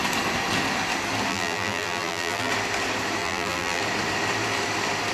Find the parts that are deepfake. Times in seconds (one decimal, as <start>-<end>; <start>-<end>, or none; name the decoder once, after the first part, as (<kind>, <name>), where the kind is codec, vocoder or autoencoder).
1.3-2.5 (vocoder, BigVGAN v2); 3.2-3.8